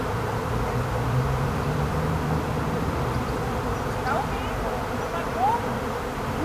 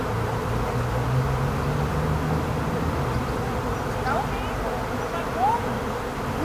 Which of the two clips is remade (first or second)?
first